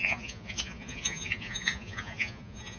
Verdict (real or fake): fake